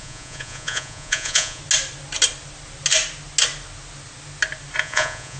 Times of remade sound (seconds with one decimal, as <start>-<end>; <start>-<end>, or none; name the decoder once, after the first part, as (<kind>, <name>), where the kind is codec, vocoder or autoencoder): 0.0-1.6 (vocoder, Vocos); 4.8-5.4